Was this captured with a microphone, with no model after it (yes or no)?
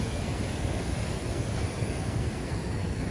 no